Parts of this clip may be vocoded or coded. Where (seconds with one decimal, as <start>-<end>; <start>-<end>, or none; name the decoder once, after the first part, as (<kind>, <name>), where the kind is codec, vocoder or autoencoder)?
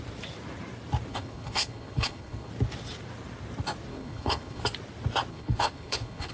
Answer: 1.1-2.5 (codec, HILCodec); 3.9-4.6; 5.3-6.3